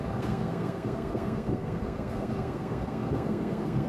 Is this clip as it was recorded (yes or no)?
no